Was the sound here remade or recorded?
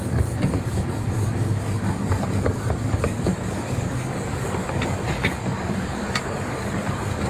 remade